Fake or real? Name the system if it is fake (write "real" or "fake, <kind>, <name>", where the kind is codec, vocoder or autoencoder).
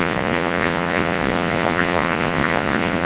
fake, vocoder, Vocos